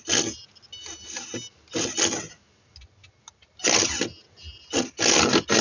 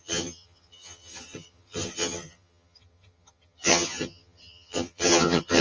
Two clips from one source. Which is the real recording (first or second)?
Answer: first